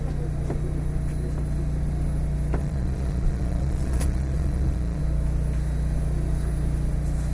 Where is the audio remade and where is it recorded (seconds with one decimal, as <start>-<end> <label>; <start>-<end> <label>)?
0.0-2.6 recorded; 2.6-5.0 remade; 5.0-7.3 recorded